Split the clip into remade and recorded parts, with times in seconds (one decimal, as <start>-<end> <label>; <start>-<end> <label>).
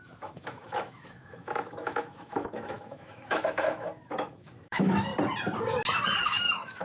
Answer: 0.0-5.1 remade; 5.1-6.2 recorded; 6.2-6.8 remade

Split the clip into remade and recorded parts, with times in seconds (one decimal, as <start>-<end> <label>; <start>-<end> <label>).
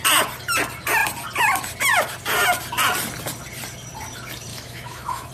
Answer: 0.0-4.5 recorded; 4.5-5.3 remade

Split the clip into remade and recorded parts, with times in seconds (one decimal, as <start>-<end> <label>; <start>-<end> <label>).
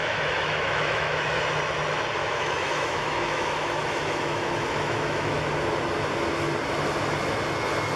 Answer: 0.0-1.4 remade; 1.4-2.2 recorded; 2.2-5.4 remade; 5.4-8.0 recorded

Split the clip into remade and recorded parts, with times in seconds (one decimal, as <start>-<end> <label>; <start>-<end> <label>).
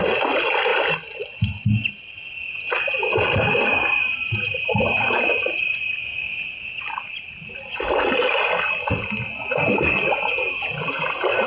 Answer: 0.0-11.5 recorded